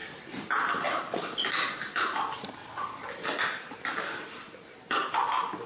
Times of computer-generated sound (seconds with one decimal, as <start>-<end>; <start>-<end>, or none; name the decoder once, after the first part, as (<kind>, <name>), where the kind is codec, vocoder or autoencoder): none